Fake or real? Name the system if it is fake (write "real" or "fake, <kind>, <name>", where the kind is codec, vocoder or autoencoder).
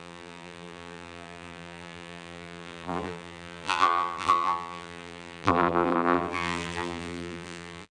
fake, vocoder, BigVGAN v2